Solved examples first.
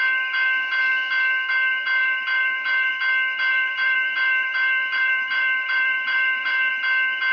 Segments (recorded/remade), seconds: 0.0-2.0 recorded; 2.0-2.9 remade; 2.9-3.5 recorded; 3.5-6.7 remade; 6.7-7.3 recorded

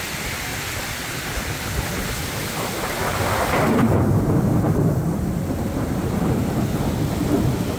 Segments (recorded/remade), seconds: 0.0-0.5 recorded; 0.5-2.0 remade; 2.0-7.8 recorded

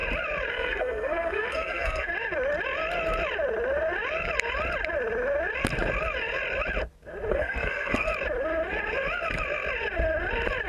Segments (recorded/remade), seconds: 0.0-0.5 recorded; 0.5-2.1 remade; 2.1-7.3 recorded; 7.3-8.1 remade; 8.1-10.7 recorded